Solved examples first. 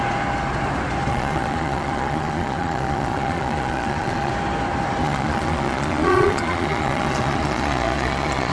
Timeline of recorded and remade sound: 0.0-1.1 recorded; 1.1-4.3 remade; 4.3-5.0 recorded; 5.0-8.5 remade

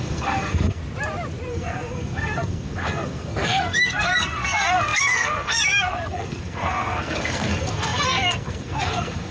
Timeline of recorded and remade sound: 0.0-0.8 remade; 0.8-1.5 recorded; 1.5-9.3 remade

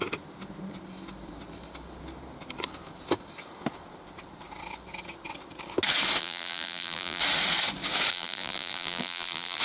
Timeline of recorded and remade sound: 0.0-6.2 recorded; 6.2-7.2 remade; 7.2-8.1 recorded; 8.1-9.6 remade

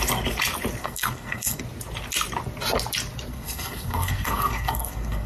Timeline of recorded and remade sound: 0.0-0.8 recorded; 0.8-1.6 remade; 1.6-3.3 recorded; 3.3-5.3 remade

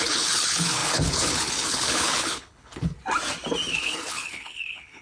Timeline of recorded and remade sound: 0.0-2.9 remade; 2.9-3.7 recorded; 3.7-5.0 remade